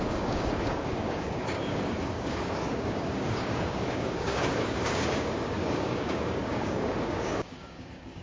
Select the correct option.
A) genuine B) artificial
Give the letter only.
B